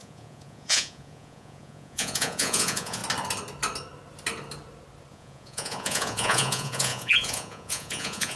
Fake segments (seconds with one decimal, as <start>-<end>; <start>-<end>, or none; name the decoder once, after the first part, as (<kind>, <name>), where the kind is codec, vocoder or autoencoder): 0.0-3.0 (vocoder, Vocos); 5.1-8.4

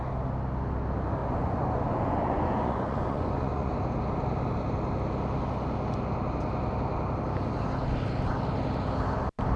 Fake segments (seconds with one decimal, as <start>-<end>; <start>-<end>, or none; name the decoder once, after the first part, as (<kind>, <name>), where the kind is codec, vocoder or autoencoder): 1.2-3.7 (vocoder, Vocos)

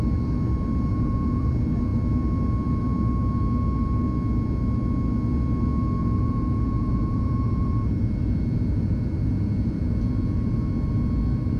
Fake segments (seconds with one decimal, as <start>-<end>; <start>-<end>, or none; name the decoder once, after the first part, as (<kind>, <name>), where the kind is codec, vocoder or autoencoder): 0.9-1.5 (vocoder, Vocos); 6.0-10.7

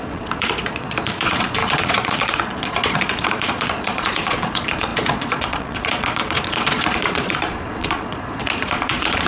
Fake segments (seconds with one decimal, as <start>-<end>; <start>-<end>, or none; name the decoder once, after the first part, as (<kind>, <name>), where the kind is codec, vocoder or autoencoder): 0.0-9.3 (vocoder, Vocos)

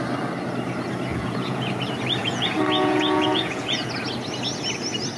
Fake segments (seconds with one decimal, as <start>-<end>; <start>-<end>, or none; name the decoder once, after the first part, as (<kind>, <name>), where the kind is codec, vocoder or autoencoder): 1.1-1.7 (vocoder, Vocos); 2.2-3.9